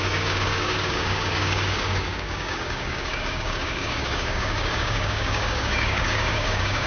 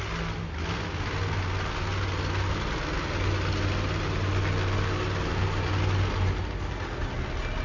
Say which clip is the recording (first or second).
second